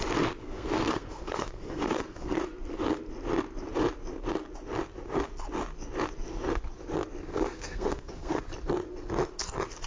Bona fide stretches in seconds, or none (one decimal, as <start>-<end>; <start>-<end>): 0.0-0.4; 2.4-7.3; 8.4-9.9